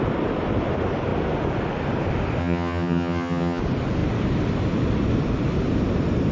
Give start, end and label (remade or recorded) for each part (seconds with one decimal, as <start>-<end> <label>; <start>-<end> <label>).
0.0-2.4 recorded; 2.4-3.6 remade; 3.6-6.3 recorded